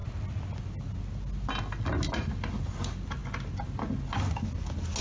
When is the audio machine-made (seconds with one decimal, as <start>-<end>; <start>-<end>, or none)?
none